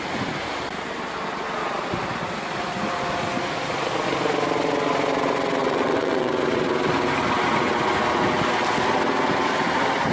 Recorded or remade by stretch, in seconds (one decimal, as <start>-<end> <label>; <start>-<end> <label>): 0.0-5.6 recorded; 5.6-6.3 remade; 6.3-10.1 recorded